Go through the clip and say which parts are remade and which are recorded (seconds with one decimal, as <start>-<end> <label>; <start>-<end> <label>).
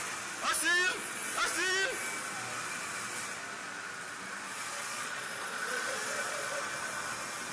0.0-0.9 recorded; 0.9-1.4 remade; 1.4-4.8 recorded; 4.8-6.6 remade; 6.6-7.5 recorded